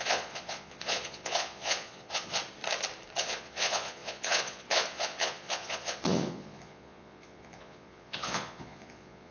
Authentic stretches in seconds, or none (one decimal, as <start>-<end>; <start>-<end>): 2.4-3.2